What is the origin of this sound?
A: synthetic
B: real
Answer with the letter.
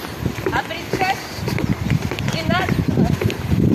A